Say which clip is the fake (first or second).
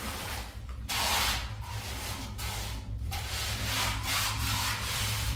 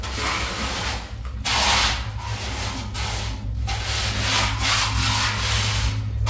first